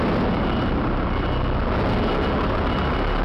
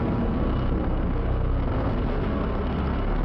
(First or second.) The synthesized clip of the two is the second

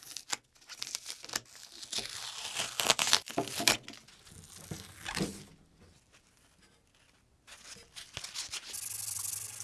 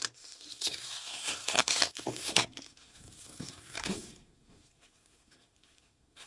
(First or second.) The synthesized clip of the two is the second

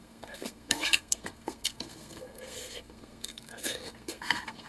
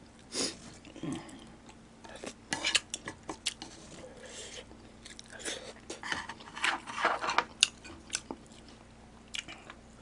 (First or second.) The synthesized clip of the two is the first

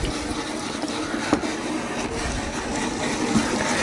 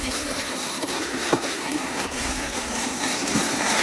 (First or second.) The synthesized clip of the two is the second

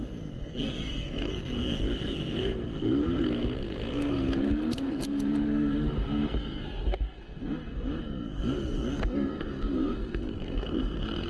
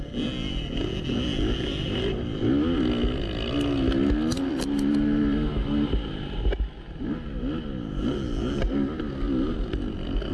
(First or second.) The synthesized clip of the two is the first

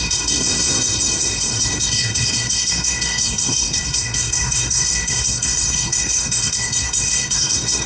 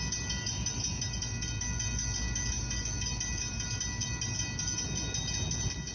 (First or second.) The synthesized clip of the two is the first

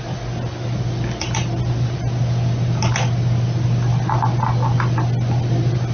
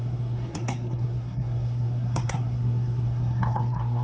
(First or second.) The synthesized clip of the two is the second